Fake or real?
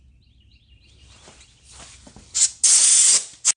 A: real